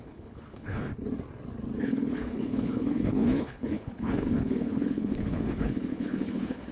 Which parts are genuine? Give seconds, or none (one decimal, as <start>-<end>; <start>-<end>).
0.9-1.8